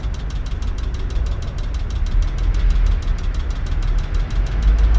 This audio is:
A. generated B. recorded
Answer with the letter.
B